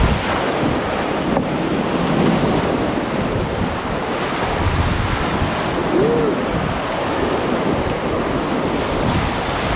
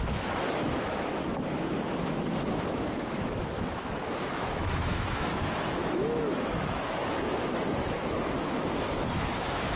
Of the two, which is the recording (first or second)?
first